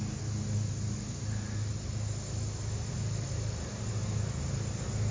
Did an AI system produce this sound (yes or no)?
no